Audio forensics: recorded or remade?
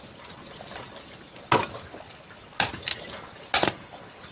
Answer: recorded